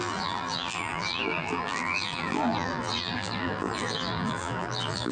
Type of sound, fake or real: fake